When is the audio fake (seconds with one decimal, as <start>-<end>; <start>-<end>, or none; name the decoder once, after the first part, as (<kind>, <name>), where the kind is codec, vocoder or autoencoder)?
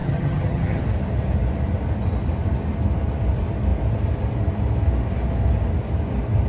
0.0-0.8 (vocoder, HiFi-GAN)